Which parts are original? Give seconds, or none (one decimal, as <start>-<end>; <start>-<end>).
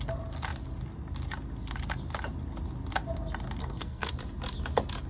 0.0-3.6; 4.1-5.1